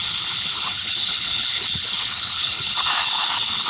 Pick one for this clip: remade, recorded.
remade